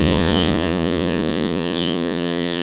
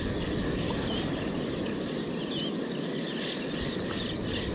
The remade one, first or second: first